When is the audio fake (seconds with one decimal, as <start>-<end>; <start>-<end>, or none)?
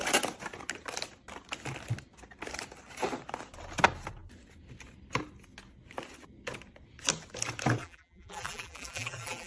7.8-9.5